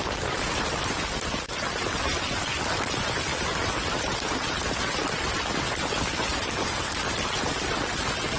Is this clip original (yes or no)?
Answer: yes